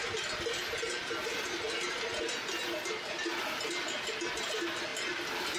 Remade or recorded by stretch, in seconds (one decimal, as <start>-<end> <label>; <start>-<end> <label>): 0.0-5.6 recorded